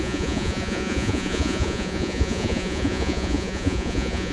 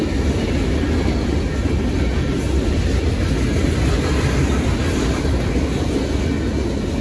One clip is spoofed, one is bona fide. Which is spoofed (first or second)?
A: first